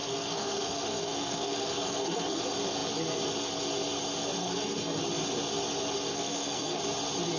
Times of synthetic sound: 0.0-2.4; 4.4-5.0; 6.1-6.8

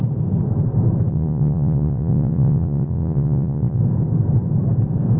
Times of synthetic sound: 1.1-3.8

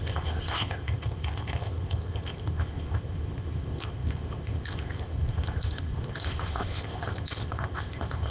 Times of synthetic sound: 0.0-8.3

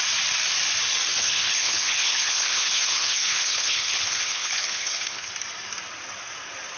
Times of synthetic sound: 1.2-5.3

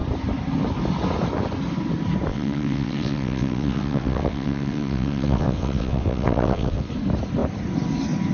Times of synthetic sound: 2.3-6.9

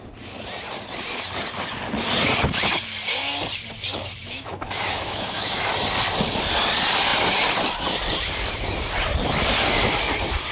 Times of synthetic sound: 4.2-5.7

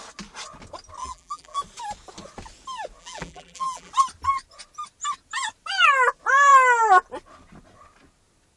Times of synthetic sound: 1.0-1.6; 3.0-3.9

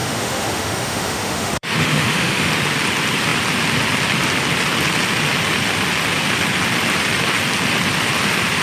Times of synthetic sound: 0.0-2.5